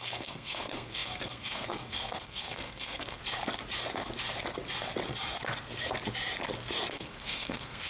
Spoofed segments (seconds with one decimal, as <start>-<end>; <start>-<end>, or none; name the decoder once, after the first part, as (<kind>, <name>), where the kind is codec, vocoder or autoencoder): 0.0-3.2 (codec, SNAC); 6.9-7.9